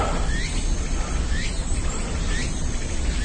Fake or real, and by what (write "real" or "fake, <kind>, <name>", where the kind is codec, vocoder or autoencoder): real